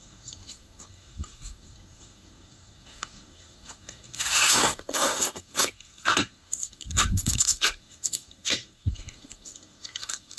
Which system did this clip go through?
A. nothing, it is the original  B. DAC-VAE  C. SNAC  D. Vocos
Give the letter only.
C